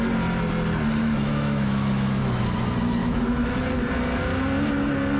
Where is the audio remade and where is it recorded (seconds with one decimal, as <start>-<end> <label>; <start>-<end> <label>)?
0.0-1.0 recorded; 1.0-2.4 remade; 2.4-3.0 recorded; 3.0-3.7 remade; 3.7-5.2 recorded